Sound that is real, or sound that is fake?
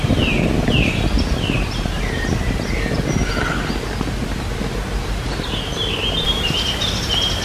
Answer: fake